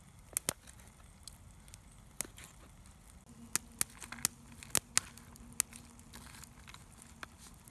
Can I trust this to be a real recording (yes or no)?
yes